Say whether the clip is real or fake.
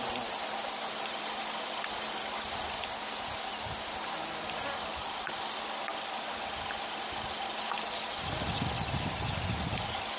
real